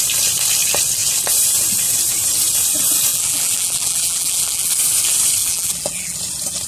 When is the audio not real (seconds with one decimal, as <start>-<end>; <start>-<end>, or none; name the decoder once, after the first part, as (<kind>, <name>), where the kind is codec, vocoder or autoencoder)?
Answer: 3.1-4.7 (vocoder, BigVGAN v2); 5.4-6.2